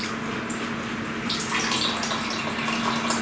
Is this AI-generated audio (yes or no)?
no